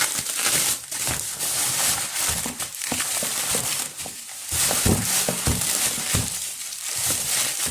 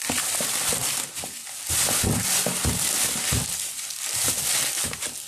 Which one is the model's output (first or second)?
first